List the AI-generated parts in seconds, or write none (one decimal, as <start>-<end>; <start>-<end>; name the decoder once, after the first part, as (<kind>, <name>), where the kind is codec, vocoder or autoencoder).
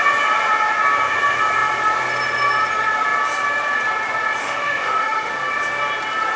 4.4-5.3 (autoencoder, DAC-VAE)